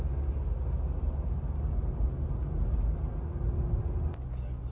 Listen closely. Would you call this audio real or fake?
real